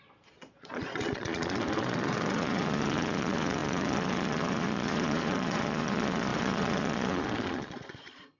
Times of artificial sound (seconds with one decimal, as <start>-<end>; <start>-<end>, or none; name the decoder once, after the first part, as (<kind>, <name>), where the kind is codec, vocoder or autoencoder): 0.0-8.4 (vocoder, Vocos)